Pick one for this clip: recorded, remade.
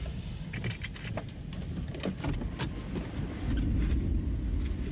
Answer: recorded